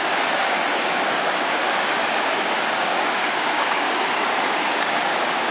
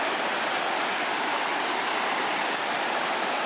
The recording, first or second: second